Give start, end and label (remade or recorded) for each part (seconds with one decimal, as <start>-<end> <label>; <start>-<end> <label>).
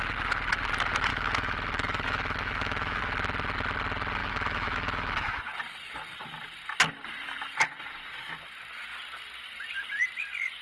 0.0-1.1 recorded; 1.1-3.0 remade; 3.0-4.2 recorded; 4.2-5.4 remade; 5.4-10.6 recorded